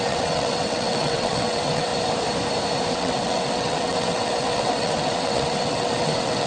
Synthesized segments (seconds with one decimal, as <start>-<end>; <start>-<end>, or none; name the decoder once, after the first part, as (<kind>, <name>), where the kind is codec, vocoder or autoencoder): 0.0-1.9 (vocoder, WaveNeXt); 2.9-6.5